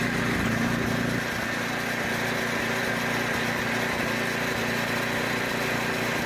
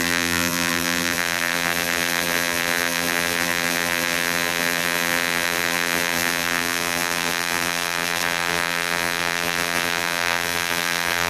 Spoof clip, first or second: second